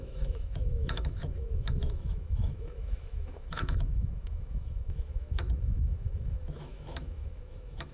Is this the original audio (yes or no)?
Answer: no